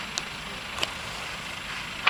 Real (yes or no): yes